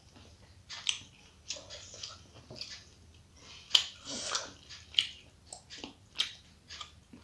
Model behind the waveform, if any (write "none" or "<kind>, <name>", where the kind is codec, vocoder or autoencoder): none